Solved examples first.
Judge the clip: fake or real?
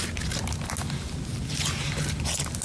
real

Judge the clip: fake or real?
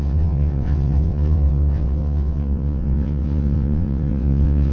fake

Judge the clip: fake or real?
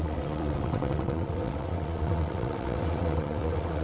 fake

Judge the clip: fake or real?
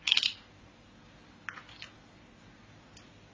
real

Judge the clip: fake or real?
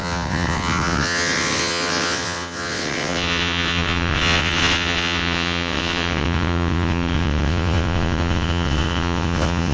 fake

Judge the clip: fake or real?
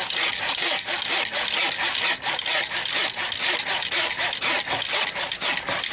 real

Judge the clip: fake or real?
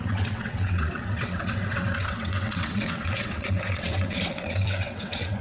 fake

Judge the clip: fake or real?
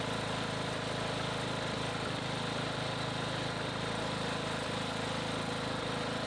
real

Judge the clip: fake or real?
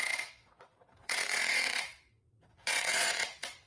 fake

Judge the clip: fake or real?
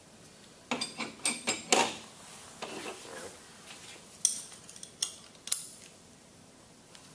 real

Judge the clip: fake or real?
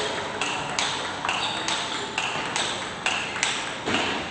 real